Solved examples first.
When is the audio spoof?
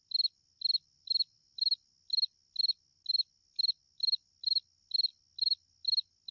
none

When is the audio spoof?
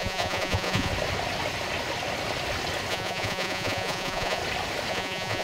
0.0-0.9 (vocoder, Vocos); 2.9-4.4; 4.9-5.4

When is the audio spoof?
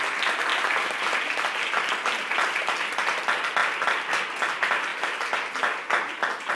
none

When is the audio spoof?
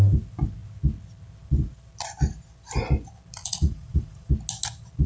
3.4-4.3 (vocoder, Vocos)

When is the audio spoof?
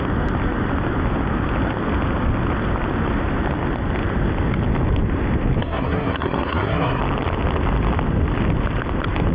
5.6-7.0 (codec, SNAC)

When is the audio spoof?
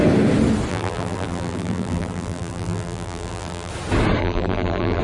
0.7-3.7 (vocoder, BigVGAN v2); 4.2-5.0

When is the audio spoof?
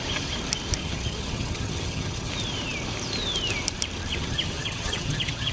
0.8-2.3 (vocoder, HiFi-GAN); 4.1-5.5